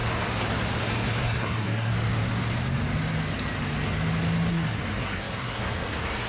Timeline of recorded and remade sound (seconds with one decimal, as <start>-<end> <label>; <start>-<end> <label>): 0.0-0.8 recorded; 0.8-1.9 remade; 1.9-4.5 recorded; 4.5-6.3 remade